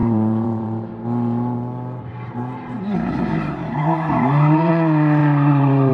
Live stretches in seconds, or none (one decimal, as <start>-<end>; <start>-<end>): 0.9-2.1; 4.7-5.2

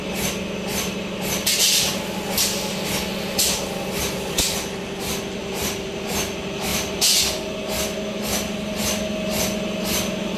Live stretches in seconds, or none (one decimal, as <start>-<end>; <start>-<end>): 0.0-5.4; 6.0-6.7; 7.2-10.4